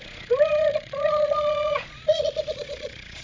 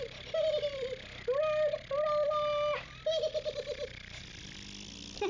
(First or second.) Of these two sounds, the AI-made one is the first